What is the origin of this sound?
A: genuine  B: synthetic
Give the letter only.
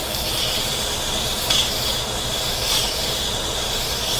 B